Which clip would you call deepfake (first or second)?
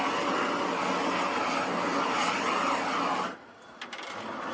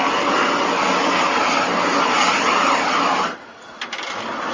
second